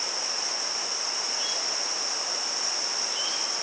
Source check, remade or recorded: recorded